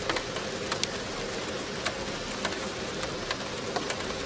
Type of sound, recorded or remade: recorded